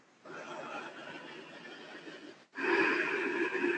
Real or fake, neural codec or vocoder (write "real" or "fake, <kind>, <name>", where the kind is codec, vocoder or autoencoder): real